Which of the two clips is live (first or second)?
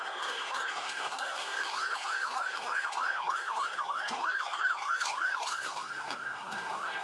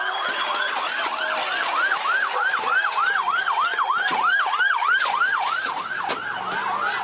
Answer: second